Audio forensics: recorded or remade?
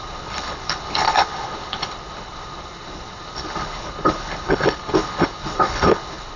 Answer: remade